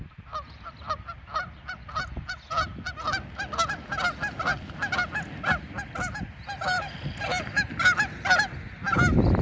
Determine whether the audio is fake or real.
real